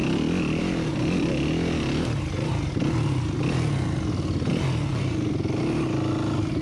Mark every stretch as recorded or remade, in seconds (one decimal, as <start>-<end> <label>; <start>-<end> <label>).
0.0-6.6 recorded